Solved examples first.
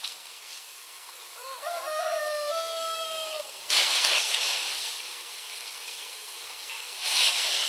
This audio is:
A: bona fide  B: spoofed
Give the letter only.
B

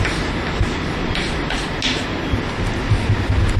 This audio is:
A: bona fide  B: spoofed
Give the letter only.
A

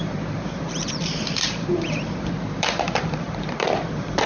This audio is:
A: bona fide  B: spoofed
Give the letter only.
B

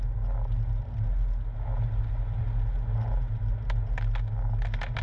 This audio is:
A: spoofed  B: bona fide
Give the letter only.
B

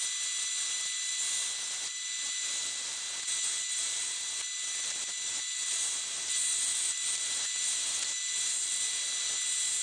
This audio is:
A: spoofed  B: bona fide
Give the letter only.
B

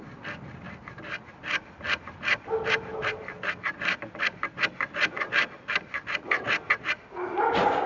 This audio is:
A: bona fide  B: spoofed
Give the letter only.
A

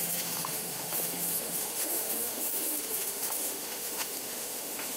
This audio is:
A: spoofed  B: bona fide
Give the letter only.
A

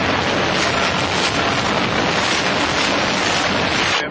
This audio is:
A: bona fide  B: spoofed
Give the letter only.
A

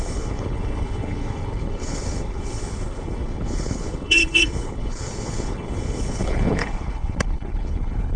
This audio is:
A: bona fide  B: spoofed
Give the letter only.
B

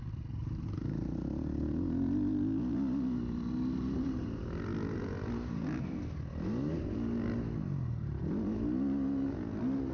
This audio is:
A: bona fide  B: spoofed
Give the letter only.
A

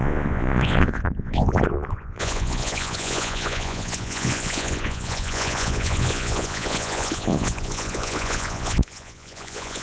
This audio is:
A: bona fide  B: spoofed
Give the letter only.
B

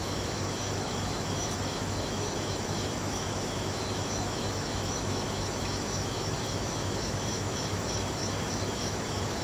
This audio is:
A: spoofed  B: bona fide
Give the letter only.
A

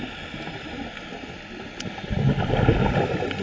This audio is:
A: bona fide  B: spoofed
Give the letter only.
A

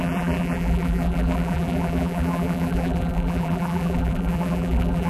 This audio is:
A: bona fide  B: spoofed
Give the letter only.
B